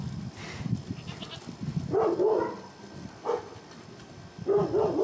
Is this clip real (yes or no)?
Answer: yes